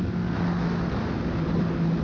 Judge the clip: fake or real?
real